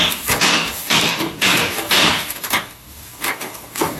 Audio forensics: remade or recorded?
remade